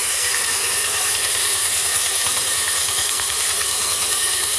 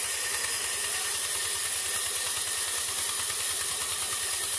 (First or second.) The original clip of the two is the second